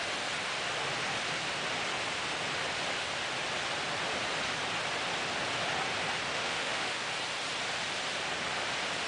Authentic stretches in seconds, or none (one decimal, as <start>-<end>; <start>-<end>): 0.0-6.3; 7.1-9.1